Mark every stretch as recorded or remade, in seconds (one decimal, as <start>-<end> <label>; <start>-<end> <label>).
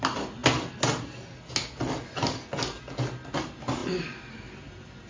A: 0.0-5.1 recorded